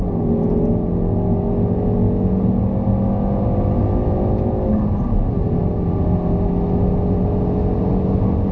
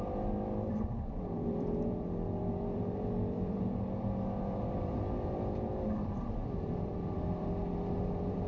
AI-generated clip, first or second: second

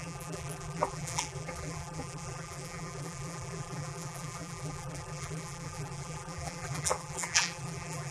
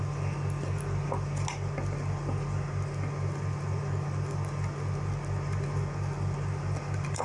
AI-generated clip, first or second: first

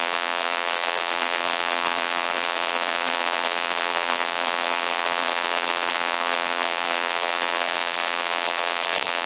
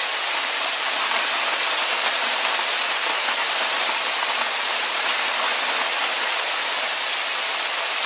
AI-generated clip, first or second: first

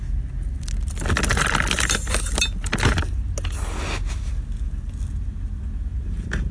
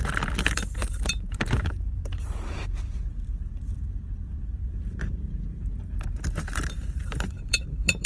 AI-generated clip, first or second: second